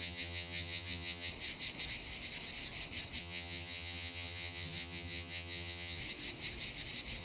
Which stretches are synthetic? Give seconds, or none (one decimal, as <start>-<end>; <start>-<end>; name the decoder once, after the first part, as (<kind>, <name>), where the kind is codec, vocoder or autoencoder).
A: 0.0-1.3 (vocoder, HiFi-GAN); 3.2-6.0

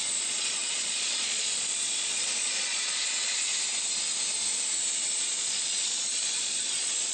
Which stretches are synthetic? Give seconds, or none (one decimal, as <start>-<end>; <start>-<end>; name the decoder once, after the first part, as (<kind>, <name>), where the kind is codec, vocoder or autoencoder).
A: 0.0-3.5 (vocoder, Vocos); 5.3-7.1

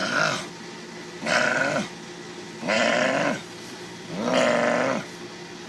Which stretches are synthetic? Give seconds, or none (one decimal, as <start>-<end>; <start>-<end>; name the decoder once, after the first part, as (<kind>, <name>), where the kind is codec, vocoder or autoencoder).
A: 2.9-4.3 (vocoder, BigVGAN v2)

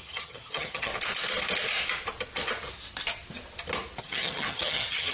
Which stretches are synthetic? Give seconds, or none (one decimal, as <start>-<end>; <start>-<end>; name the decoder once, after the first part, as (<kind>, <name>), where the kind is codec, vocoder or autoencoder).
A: 0.0-0.9 (vocoder, HiFi-GAN); 4.0-5.1